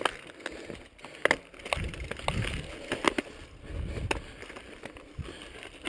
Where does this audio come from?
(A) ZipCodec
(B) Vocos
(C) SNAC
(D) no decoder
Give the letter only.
D